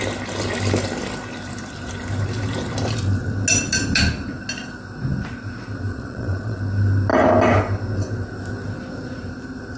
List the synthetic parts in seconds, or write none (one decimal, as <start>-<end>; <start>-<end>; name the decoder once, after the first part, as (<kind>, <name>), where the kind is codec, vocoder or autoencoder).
5.9-6.6 (vocoder, Vocos)